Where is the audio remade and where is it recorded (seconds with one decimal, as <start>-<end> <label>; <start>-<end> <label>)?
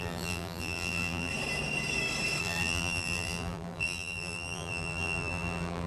0.0-1.3 remade; 1.3-2.4 recorded; 2.4-5.9 remade